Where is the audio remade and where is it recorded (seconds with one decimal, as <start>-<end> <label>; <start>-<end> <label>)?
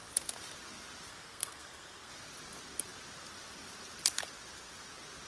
0.0-1.1 recorded; 1.1-2.1 remade; 2.1-5.3 recorded